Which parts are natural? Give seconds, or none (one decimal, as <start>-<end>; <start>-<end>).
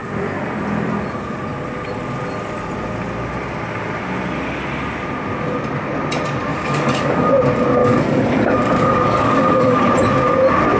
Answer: 0.0-6.5; 7.3-7.8; 9.9-10.8